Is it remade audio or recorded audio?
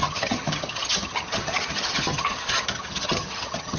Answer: remade